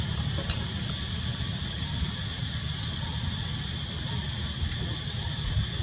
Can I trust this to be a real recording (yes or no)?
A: yes